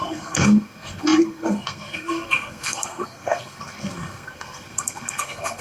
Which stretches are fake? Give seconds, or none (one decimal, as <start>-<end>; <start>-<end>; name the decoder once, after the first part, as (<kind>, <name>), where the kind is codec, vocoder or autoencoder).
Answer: 0.0-5.6 (codec, SNAC)